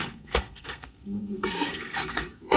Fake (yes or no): yes